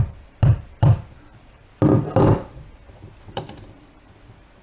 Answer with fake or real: real